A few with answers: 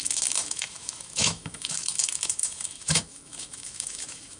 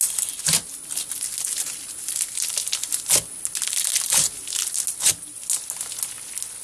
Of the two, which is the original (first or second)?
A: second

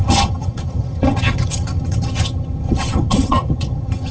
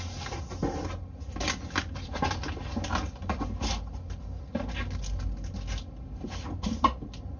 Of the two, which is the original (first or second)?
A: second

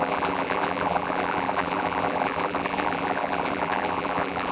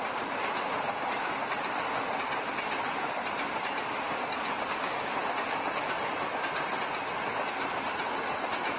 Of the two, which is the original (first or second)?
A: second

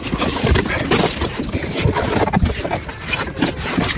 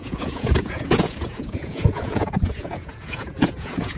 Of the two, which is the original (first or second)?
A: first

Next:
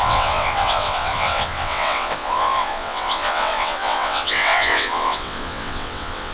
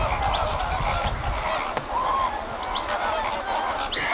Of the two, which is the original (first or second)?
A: second